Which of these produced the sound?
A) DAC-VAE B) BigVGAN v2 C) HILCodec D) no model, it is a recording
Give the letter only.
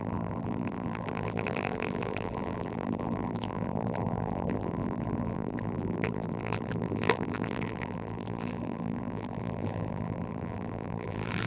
B